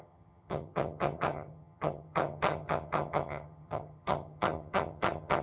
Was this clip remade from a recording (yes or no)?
yes